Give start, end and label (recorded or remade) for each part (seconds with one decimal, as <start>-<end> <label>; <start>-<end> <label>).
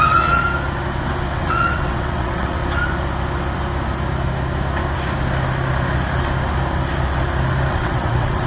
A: 0.0-0.4 remade; 0.4-1.3 recorded; 1.3-2.6 remade; 2.6-7.7 recorded; 7.7-8.5 remade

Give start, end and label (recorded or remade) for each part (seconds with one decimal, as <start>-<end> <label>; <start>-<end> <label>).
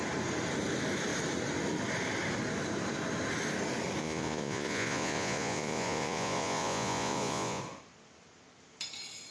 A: 0.0-4.0 recorded; 4.0-7.6 remade; 7.6-9.3 recorded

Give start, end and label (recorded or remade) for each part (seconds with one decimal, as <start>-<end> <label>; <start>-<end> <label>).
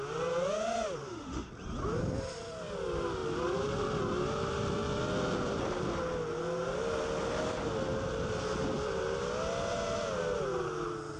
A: 0.0-1.0 recorded; 1.0-1.5 remade; 1.5-11.2 recorded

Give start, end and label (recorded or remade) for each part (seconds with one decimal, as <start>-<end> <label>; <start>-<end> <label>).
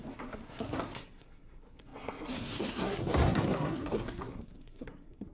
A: 0.0-5.3 remade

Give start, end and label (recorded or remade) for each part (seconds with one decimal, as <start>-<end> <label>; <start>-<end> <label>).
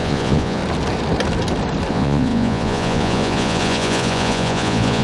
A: 0.0-0.6 remade; 0.6-1.9 recorded; 1.9-5.0 remade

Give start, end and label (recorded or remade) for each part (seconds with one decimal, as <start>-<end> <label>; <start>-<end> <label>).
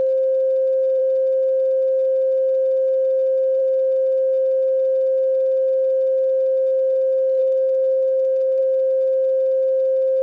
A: 0.0-7.4 recorded; 7.4-8.6 remade; 8.6-10.2 recorded